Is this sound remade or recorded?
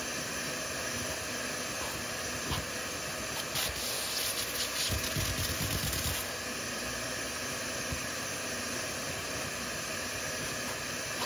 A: recorded